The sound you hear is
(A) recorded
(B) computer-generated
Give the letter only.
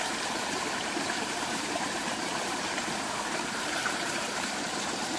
B